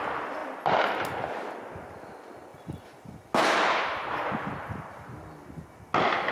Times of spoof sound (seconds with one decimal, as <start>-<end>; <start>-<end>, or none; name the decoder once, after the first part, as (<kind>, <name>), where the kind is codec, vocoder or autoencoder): none

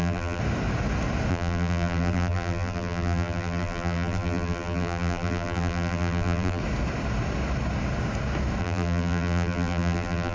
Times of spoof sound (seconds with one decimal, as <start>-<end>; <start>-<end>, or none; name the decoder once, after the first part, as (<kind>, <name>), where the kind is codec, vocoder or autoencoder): 0.0-0.4 (vocoder, BigVGAN v2); 1.3-6.6; 8.6-10.3

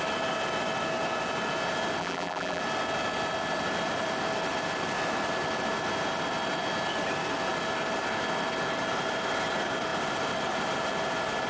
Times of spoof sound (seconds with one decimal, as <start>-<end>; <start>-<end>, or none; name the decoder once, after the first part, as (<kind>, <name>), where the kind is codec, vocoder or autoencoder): 2.0-2.6 (vocoder, BigVGAN v2)

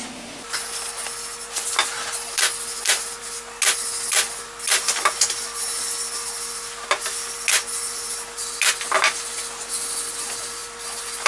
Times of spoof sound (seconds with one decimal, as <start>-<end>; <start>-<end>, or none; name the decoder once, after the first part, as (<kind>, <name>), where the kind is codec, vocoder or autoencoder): none

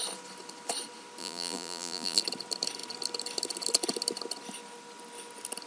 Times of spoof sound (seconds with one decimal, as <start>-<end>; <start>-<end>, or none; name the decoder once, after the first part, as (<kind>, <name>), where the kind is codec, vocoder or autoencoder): 1.2-2.2 (vocoder, BigVGAN v2)

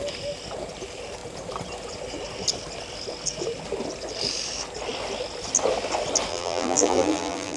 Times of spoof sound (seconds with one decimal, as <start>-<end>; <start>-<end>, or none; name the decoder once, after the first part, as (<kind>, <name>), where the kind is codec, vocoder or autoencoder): 6.3-7.6 (vocoder, BigVGAN v2)

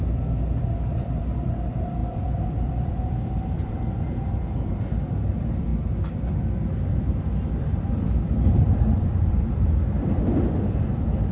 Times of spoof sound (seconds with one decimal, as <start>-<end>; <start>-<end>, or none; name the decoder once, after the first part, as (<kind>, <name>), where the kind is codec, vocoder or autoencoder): 0.0-5.7 (vocoder, BigVGAN v2); 7.0-11.3